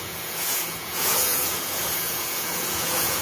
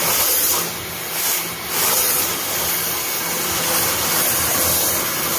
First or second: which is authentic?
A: second